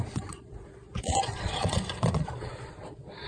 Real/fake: fake